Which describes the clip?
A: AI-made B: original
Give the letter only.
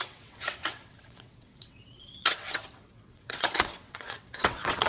A